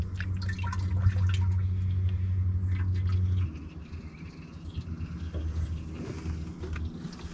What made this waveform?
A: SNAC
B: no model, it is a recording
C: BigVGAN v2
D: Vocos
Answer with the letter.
B